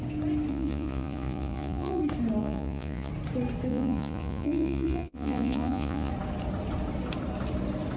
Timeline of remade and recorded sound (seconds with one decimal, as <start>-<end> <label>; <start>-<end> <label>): 0.0-0.5 recorded; 0.5-2.0 remade; 2.0-2.4 recorded; 2.4-3.1 remade; 3.1-3.7 recorded; 3.7-6.1 remade; 6.1-8.0 recorded